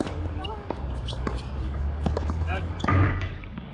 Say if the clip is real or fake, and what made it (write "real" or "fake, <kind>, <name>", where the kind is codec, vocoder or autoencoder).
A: fake, codec, DAC